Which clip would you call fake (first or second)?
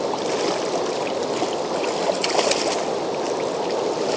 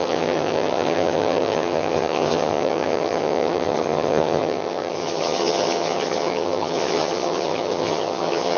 second